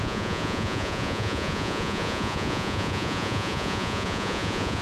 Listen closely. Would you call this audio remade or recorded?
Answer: remade